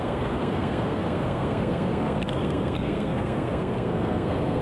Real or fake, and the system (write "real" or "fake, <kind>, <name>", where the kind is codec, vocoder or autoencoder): fake, codec, SNAC